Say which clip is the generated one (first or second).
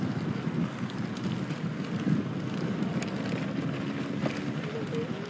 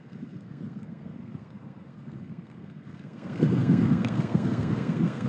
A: second